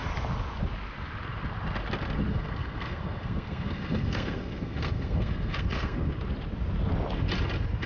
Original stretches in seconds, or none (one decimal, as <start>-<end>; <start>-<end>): 0.0-2.3; 6.1-7.9

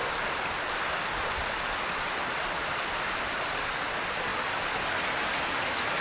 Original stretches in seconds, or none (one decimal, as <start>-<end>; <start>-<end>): 0.0-6.0

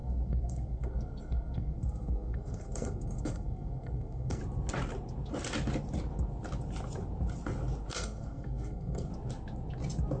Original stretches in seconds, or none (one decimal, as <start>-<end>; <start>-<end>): 4.4-7.9; 9.1-10.2

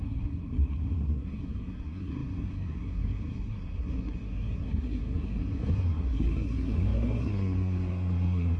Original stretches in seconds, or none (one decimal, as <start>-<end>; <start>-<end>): none

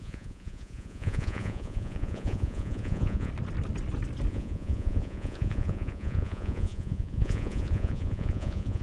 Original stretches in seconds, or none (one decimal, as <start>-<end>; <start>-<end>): 3.3-4.3

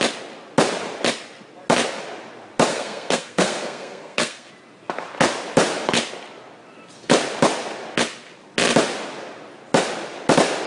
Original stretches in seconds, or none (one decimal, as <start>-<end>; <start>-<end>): 0.0-2.7; 4.5-10.7

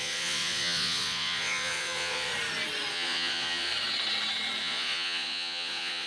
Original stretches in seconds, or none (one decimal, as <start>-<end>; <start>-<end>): 2.3-2.9; 3.7-4.6

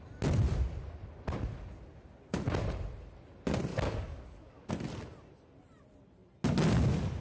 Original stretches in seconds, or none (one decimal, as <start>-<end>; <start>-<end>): 0.0-3.7; 4.7-7.2